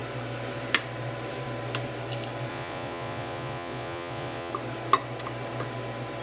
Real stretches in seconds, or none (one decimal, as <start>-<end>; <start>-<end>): 0.0-2.5; 4.5-6.2